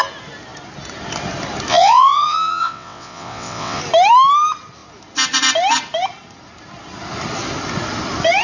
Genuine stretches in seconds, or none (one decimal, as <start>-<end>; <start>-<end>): 0.0-1.7; 3.8-8.4